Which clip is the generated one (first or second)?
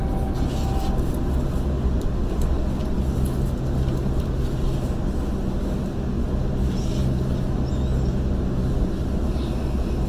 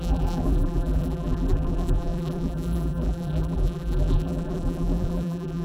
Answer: second